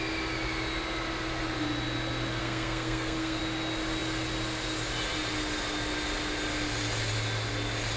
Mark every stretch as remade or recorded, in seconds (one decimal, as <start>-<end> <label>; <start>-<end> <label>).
0.0-2.4 recorded; 2.4-3.4 remade; 3.4-8.0 recorded